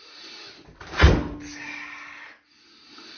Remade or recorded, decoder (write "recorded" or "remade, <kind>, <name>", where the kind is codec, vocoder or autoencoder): recorded